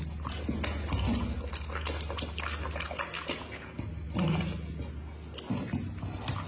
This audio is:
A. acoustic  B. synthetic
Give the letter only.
A